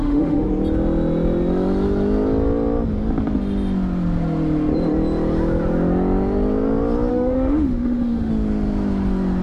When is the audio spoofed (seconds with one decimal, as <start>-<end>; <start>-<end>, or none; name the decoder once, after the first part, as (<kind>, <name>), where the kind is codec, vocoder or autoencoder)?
0.0-0.5 (autoencoder, DAC-VAE); 7.1-8.3